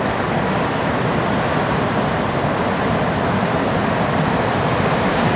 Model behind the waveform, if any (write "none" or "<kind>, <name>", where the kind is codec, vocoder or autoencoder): none